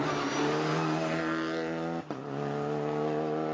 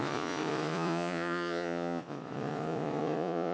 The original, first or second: first